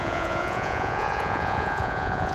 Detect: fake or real fake